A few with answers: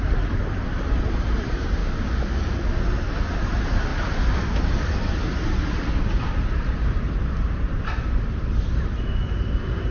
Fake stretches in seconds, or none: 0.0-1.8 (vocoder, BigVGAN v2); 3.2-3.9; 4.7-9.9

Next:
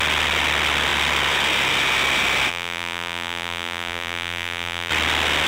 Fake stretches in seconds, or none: 2.5-4.9 (vocoder, BigVGAN v2)

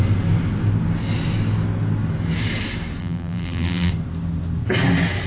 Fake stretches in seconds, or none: 3.0-3.9 (vocoder, BigVGAN v2)

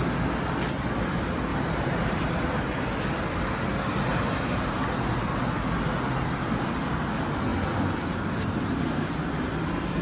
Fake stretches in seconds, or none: 1.5-2.6 (vocoder, BigVGAN v2); 4.1-5.1